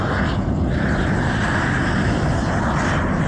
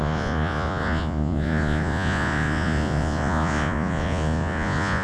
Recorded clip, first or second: first